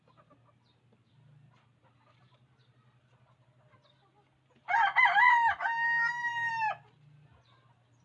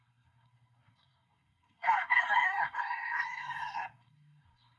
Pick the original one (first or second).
first